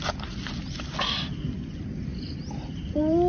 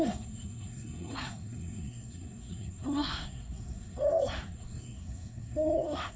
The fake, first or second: second